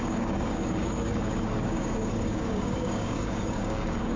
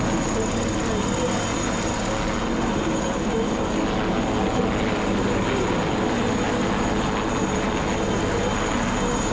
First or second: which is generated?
first